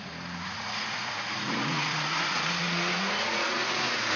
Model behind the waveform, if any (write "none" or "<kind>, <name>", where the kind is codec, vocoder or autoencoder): vocoder, Vocos